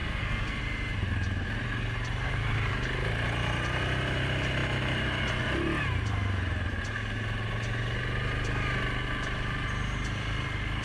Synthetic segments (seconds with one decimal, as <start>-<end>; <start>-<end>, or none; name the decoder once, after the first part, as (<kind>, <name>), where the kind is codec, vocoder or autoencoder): 0.0-0.6 (codec, SNAC)